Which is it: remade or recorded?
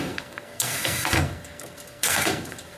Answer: remade